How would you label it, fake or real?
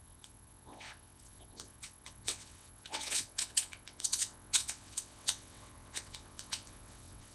fake